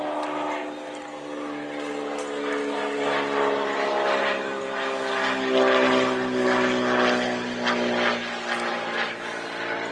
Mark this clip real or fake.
real